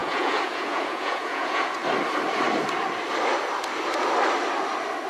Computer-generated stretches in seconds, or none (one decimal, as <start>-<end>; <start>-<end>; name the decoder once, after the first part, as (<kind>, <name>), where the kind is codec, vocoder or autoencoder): 0.0-1.8 (vocoder, Vocos)